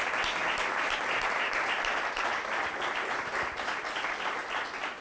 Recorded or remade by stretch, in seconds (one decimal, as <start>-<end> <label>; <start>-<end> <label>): 0.0-5.0 recorded